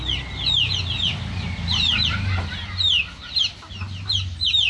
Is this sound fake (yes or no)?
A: no